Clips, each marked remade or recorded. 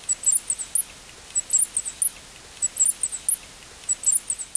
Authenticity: recorded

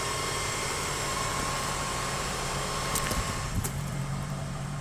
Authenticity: remade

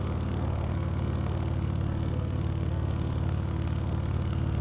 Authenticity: remade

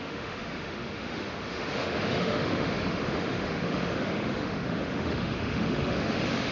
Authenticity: remade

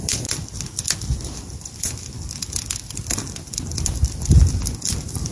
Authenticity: recorded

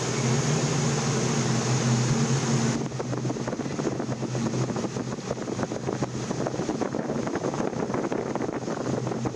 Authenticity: recorded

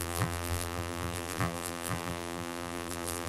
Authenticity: remade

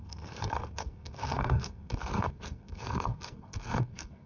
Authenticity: remade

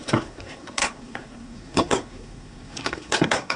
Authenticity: remade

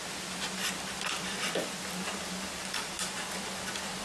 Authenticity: remade